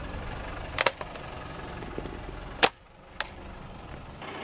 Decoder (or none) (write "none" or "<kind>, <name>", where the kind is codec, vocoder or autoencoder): none